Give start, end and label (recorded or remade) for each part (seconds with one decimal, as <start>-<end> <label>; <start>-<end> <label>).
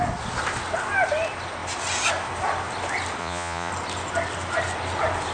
0.0-3.2 recorded; 3.2-3.7 remade; 3.7-5.3 recorded